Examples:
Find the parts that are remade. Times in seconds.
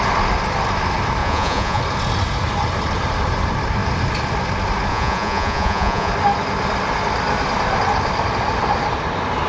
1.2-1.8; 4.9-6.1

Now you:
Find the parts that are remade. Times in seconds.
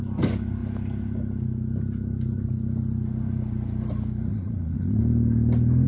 4.3-5.0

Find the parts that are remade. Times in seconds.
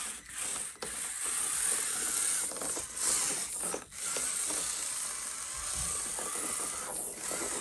none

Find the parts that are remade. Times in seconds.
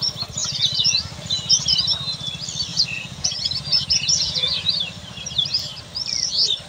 0.4-1.0; 2.7-4.7